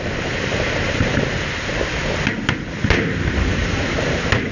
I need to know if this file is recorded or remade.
recorded